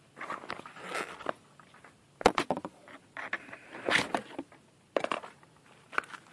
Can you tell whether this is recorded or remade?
recorded